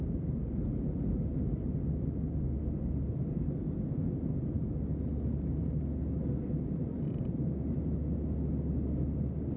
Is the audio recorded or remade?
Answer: recorded